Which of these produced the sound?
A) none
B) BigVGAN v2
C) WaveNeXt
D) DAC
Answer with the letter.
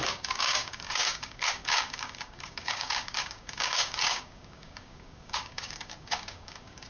D